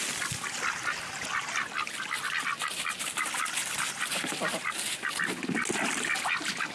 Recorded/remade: recorded